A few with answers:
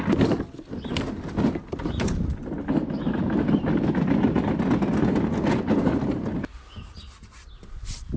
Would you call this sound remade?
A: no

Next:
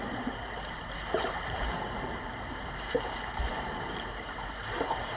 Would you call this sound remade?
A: yes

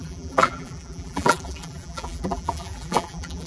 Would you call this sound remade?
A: yes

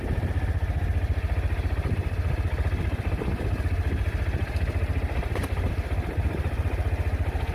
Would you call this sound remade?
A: no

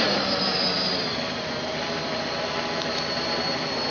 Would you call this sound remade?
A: yes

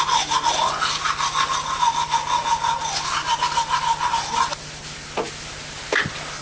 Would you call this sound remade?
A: no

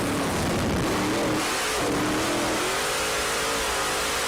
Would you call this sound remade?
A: no